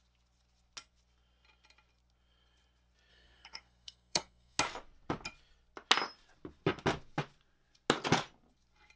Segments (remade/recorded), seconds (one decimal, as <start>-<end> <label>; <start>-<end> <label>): 0.0-3.1 recorded; 3.1-4.6 remade; 4.6-9.0 recorded